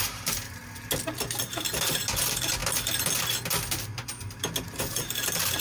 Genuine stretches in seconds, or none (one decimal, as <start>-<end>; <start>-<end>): 0.6-1.5; 2.6-3.7